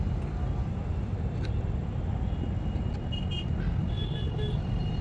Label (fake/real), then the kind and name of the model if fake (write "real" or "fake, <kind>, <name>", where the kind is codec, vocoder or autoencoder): real